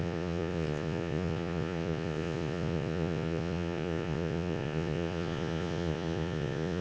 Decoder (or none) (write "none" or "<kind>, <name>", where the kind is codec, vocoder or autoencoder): vocoder, Vocos